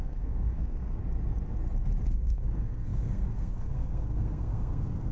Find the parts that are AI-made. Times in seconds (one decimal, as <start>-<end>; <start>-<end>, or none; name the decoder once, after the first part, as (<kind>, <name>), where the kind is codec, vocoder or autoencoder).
0.0-1.0 (codec, SNAC); 2.1-5.1